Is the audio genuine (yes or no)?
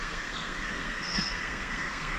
no